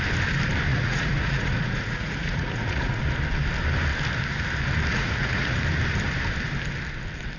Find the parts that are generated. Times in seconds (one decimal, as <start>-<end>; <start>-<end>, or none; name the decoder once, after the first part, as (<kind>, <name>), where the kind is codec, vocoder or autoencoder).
0.7-3.0 (vocoder, Vocos); 4.9-5.6